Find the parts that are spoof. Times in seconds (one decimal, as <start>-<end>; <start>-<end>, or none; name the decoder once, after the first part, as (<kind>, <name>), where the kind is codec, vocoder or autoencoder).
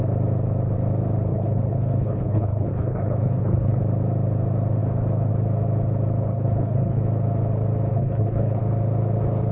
1.3-3.8 (codec, HILCodec); 6.2-7.0; 7.9-8.6